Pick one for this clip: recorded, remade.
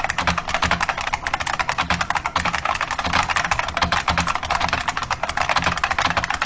recorded